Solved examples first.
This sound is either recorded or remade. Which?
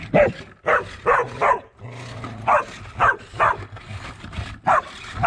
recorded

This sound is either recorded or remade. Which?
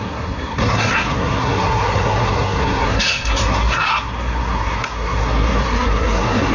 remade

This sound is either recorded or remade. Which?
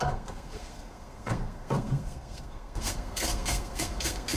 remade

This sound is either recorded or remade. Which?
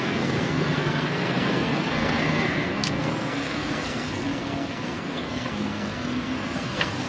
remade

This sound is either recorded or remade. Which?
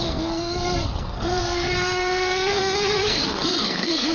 remade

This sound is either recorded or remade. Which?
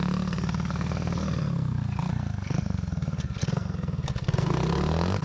remade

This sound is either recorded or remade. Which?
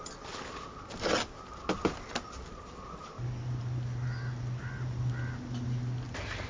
recorded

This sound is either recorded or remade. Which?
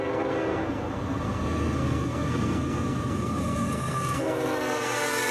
remade